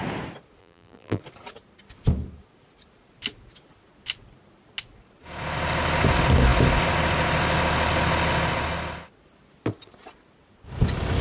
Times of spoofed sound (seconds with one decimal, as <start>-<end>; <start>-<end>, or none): 0.6-1.2